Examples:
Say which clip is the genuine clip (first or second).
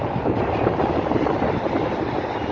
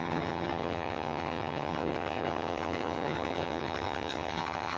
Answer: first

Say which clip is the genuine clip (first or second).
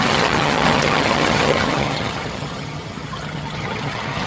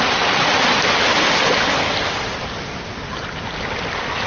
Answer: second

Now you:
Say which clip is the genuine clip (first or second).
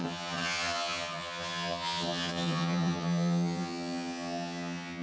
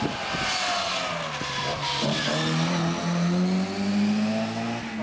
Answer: second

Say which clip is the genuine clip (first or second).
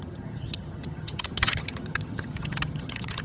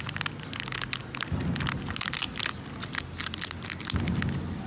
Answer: second